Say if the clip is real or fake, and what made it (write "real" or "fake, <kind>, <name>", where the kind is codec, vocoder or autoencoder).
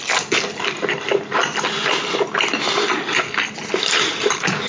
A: fake, vocoder, BigVGAN v2